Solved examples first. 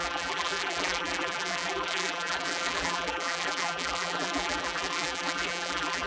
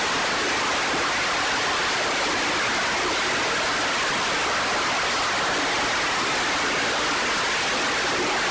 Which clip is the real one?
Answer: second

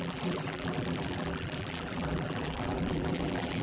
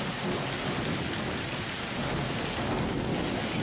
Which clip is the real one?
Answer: second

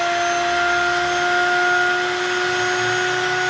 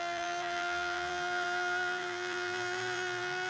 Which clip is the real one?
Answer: first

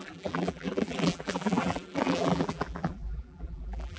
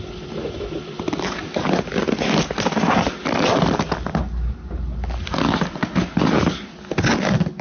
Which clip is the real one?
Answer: second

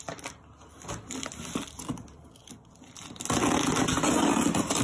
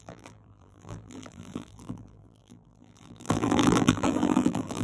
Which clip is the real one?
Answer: first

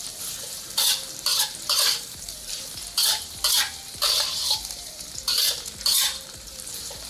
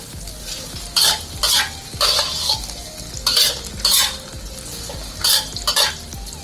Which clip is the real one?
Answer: second